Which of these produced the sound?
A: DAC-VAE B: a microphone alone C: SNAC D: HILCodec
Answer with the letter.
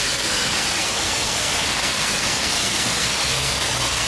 C